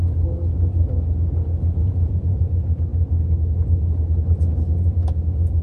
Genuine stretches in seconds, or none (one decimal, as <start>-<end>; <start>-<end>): 0.0-1.8; 2.4-5.6